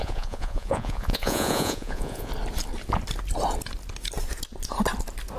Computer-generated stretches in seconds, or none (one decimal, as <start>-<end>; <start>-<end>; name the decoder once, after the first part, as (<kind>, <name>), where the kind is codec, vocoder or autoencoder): 0.0-2.3 (vocoder, Vocos)